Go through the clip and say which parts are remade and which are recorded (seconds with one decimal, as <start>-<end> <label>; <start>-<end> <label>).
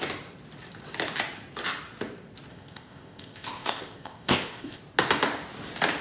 0.0-2.5 recorded; 2.5-4.8 remade; 4.8-6.0 recorded